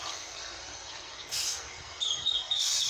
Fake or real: fake